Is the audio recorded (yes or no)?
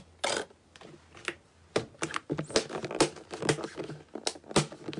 yes